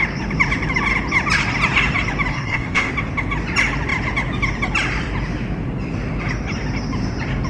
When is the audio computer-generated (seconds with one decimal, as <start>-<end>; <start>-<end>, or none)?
2.3-2.9